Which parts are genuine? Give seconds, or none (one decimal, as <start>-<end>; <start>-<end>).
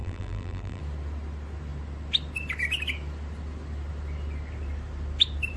0.8-5.6